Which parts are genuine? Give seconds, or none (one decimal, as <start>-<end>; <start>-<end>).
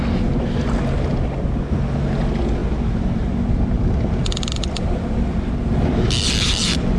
0.0-2.6